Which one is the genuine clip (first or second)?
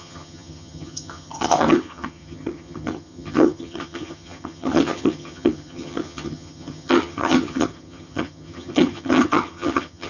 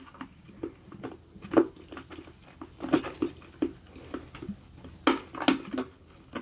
second